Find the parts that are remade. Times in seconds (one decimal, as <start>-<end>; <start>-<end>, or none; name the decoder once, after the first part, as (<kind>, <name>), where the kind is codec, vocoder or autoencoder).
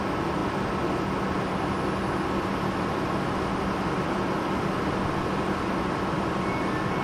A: none